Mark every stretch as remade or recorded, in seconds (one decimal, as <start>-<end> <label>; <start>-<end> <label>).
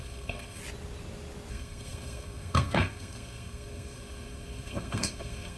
0.0-0.6 remade; 0.6-1.5 recorded; 1.5-5.6 remade